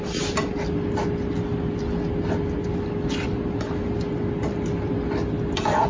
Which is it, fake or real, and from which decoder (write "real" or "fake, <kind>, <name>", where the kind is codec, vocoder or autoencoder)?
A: real